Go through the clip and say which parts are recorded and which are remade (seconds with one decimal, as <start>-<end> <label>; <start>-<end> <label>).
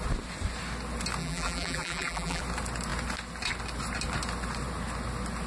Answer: 0.0-1.2 recorded; 1.2-2.4 remade; 2.4-5.5 recorded